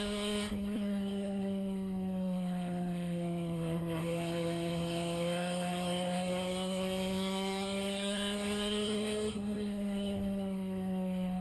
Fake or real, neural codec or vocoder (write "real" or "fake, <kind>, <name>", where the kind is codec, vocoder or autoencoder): fake, codec, SNAC